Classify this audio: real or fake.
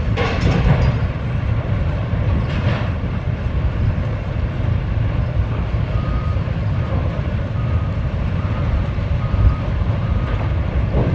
fake